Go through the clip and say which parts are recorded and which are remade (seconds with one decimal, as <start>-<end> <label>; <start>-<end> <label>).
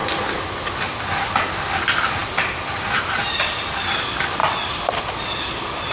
0.0-4.4 recorded; 4.4-4.9 remade; 4.9-5.9 recorded